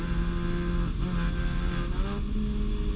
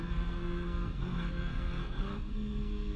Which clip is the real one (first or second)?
first